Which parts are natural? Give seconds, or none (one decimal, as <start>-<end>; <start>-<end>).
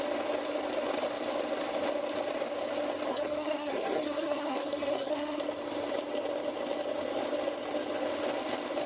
0.0-3.1; 5.4-8.9